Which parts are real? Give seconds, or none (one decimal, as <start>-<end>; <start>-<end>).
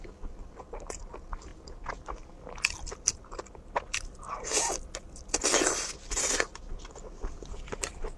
0.0-8.2